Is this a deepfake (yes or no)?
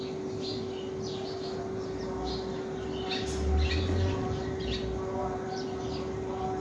no